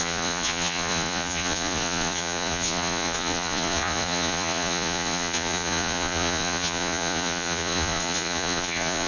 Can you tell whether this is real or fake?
fake